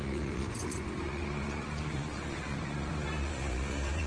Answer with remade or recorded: remade